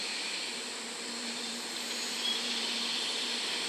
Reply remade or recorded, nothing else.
remade